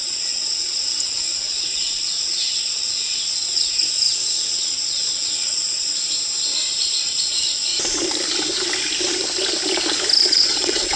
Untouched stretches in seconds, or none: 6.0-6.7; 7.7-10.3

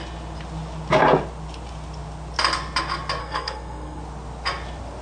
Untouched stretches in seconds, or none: 0.0-3.2; 4.0-5.0

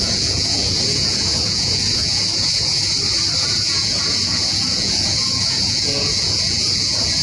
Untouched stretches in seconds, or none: 2.8-3.4

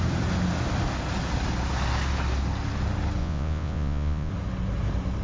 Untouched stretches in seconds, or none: 0.0-3.2; 4.3-5.2

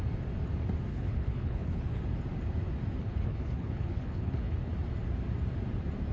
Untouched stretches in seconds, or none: 0.0-0.9; 2.0-3.0; 4.7-6.1

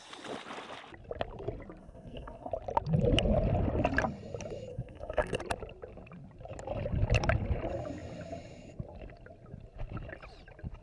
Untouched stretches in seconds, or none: 0.0-1.8; 2.5-4.7; 5.4-10.8

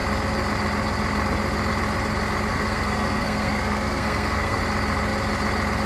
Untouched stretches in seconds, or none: 0.0-2.5; 4.6-5.9